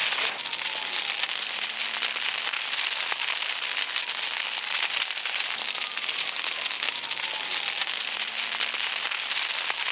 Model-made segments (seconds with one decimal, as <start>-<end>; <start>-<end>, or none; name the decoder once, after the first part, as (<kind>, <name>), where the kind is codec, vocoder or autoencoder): none

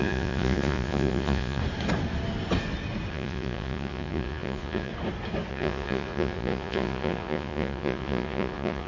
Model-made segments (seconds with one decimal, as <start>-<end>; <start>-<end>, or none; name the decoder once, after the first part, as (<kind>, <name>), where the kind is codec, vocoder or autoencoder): 0.0-1.6 (vocoder, Vocos); 3.1-4.9; 5.5-8.9

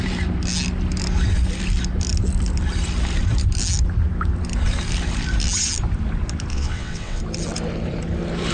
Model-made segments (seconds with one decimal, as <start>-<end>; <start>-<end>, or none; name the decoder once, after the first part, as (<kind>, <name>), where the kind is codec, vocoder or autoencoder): 6.5-7.2 (vocoder, WaveNeXt)